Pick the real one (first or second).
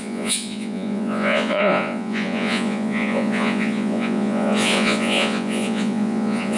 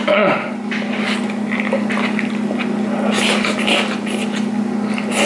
second